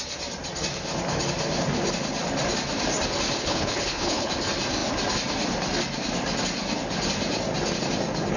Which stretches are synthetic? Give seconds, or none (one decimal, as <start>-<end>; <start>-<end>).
3.4-4.3